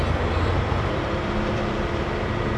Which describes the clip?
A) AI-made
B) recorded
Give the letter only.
A